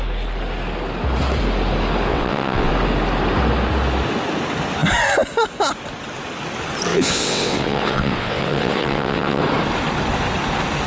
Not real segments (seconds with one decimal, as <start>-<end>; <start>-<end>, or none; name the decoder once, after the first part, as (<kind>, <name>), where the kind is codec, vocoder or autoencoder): 2.1-2.7 (vocoder, WaveNeXt); 6.9-9.4